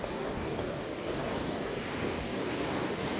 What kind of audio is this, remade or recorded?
remade